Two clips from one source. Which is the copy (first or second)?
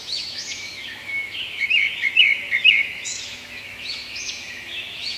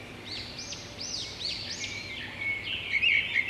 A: first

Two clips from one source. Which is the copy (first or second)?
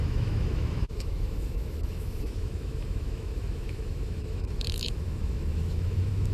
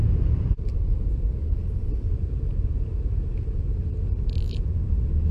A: first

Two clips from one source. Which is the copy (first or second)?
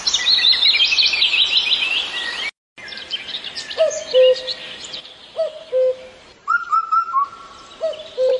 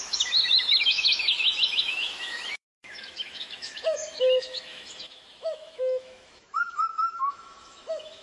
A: second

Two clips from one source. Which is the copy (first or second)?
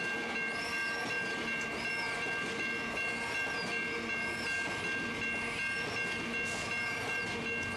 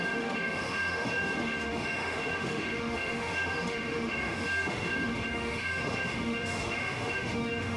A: second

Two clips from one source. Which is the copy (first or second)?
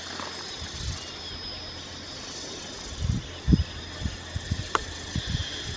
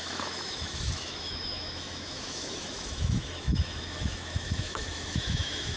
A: second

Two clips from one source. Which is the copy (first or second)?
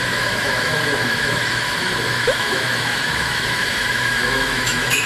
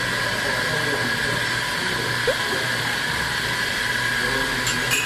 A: first